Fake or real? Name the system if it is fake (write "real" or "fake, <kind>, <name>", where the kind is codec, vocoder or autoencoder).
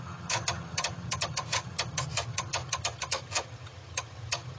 fake, vocoder, HiFi-GAN